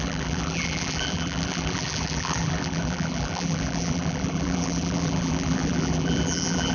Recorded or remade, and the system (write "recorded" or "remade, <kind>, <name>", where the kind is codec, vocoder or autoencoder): remade, vocoder, BigVGAN v2